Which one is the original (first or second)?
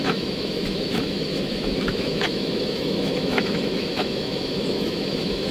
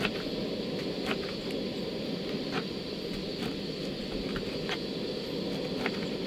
second